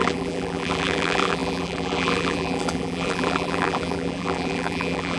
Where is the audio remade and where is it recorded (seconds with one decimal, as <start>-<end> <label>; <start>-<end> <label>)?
0.0-5.2 remade